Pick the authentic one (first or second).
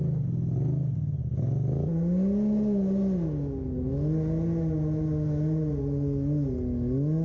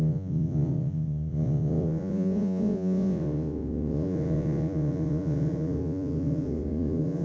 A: first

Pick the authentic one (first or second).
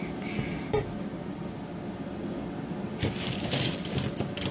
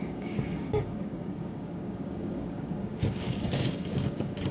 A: first